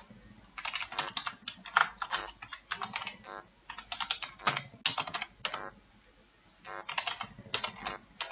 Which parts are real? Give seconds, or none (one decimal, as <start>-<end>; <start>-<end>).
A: 0.0-8.3